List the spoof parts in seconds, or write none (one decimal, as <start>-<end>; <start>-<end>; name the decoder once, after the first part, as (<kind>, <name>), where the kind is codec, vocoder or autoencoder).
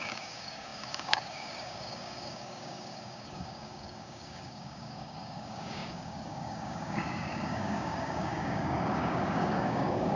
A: 0.0-10.2 (codec, DAC)